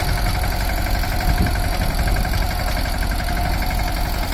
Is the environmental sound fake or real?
real